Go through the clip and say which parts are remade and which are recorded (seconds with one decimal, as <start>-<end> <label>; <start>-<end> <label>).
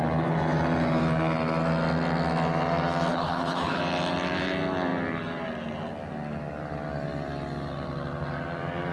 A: 0.0-3.1 recorded; 3.1-3.8 remade; 3.8-8.9 recorded